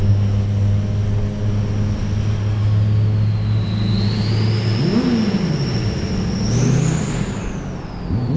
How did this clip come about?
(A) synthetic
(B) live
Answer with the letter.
B